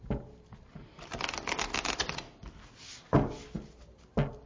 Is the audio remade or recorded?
recorded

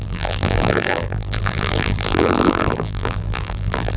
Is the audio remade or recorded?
remade